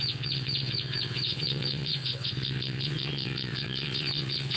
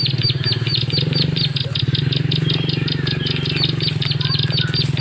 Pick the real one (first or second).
second